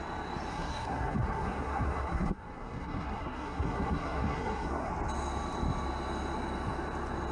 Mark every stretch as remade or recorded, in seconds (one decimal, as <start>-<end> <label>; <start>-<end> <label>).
0.0-0.5 recorded; 0.5-4.9 remade; 4.9-7.3 recorded